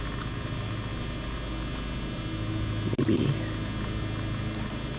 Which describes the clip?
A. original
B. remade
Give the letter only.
A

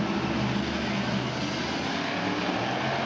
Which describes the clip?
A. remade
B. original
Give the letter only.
B